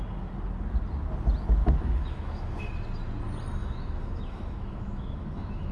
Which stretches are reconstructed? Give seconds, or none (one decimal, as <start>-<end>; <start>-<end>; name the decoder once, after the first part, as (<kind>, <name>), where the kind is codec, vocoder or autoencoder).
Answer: 1.6-2.6 (autoencoder, DAC-VAE); 3.6-5.7